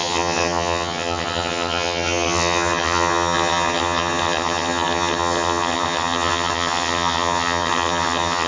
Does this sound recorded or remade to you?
remade